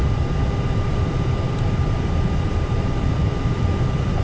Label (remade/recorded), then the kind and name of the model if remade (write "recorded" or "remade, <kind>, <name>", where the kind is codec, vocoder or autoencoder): remade, vocoder, BigVGAN v2